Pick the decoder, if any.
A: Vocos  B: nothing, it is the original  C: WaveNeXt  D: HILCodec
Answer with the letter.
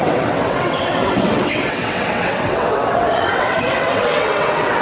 C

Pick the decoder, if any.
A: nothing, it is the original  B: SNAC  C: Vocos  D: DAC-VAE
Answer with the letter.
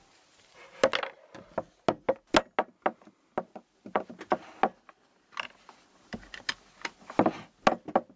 A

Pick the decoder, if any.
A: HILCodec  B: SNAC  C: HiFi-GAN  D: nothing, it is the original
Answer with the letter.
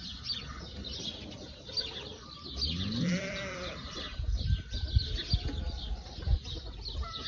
D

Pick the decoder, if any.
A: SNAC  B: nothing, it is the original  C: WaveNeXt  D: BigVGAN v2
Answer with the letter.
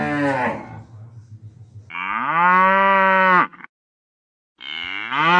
B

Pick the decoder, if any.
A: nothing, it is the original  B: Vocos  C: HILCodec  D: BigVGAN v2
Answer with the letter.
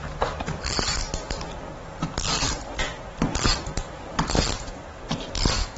A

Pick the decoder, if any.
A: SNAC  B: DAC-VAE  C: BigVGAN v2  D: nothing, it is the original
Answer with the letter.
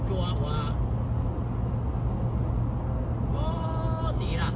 D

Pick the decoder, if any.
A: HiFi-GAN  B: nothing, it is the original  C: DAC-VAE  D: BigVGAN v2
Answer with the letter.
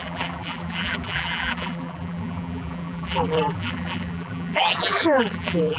D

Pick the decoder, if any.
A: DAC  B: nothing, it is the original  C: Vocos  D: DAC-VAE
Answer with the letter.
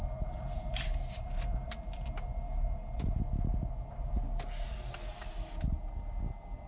B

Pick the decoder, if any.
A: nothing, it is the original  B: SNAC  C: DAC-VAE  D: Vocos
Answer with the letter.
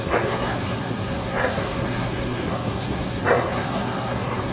B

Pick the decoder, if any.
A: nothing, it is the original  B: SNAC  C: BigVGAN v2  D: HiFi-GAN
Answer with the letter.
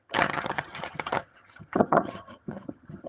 D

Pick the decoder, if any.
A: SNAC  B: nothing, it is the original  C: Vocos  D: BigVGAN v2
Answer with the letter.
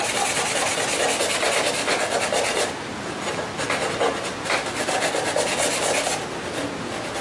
B